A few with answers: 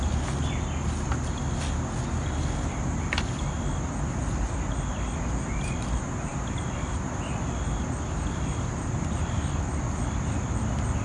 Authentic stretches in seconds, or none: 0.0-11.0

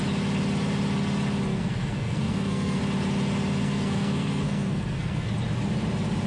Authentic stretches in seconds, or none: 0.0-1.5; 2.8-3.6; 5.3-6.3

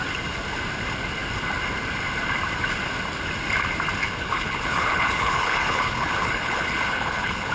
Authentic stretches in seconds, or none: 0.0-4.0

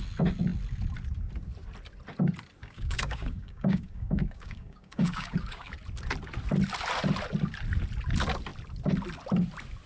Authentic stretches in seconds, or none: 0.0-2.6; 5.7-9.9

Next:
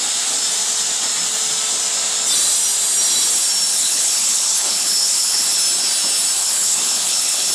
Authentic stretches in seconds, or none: 0.0-3.7; 5.6-6.4

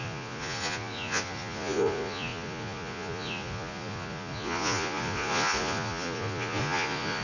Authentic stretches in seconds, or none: none

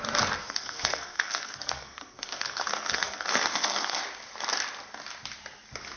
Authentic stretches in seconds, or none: 0.0-0.4; 4.0-6.0